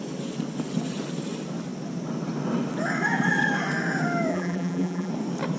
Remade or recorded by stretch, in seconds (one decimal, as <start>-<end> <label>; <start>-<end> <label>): 0.0-4.3 recorded; 4.3-5.1 remade; 5.1-5.6 recorded